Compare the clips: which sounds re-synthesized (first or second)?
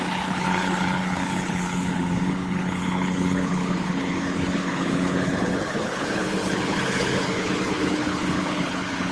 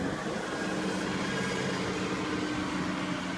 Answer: first